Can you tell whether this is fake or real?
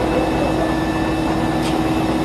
real